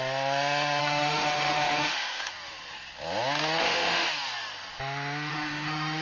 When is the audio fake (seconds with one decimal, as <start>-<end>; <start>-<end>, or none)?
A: 0.8-2.3; 3.6-4.1; 5.3-6.0

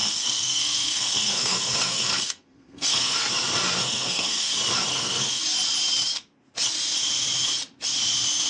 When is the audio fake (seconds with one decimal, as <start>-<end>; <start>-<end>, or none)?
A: 0.0-3.2; 3.8-4.5; 4.9-5.4

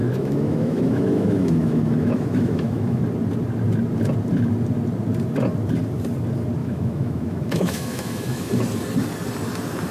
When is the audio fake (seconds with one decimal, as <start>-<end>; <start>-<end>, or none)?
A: 0.0-3.0; 6.6-8.5

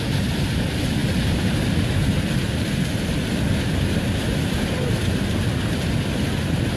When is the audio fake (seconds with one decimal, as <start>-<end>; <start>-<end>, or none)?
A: none

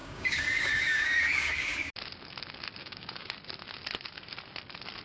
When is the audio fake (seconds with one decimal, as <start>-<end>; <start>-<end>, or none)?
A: 0.0-1.9; 2.8-3.3